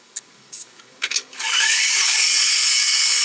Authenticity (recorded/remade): remade